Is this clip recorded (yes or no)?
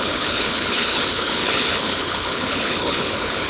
no